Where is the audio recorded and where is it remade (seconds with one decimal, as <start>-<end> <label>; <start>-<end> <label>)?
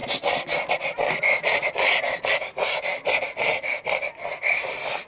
0.0-2.9 remade; 2.9-4.4 recorded; 4.4-5.1 remade